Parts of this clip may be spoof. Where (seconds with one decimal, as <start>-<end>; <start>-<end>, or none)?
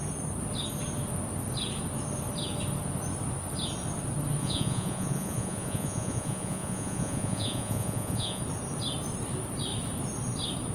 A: 4.4-8.4